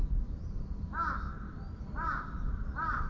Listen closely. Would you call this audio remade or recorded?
recorded